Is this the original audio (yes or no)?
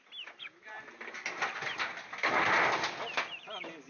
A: yes